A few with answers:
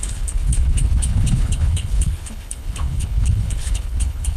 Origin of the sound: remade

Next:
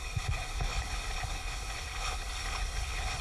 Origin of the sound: remade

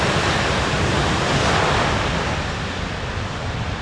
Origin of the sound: recorded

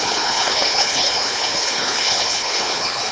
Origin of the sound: remade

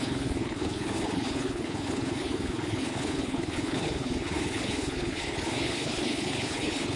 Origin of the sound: remade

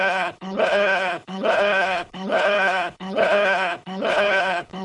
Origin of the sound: remade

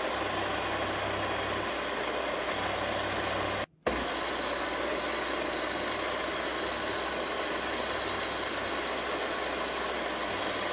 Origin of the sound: recorded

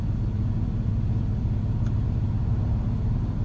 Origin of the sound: recorded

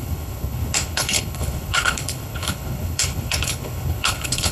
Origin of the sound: remade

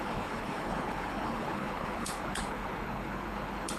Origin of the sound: remade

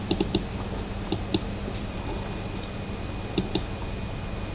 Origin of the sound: recorded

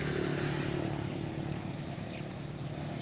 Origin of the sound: recorded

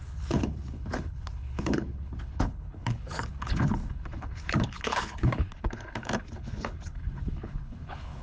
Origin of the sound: remade